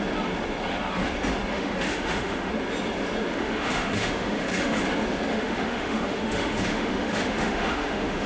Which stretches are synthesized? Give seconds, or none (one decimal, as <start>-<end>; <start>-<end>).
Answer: 1.5-2.5; 3.3-4.8; 5.3-8.3